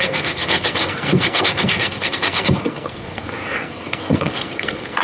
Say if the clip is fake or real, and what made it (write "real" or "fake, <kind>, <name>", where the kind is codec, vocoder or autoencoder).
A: fake, codec, SNAC